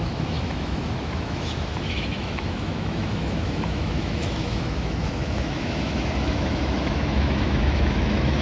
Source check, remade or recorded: remade